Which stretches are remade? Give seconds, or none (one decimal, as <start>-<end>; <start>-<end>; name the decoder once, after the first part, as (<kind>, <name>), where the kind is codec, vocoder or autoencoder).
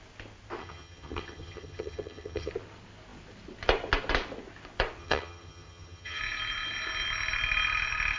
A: 0.6-2.5 (vocoder, HiFi-GAN); 5.0-6.2